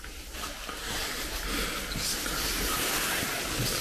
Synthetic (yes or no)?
no